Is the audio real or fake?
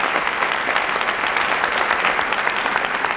real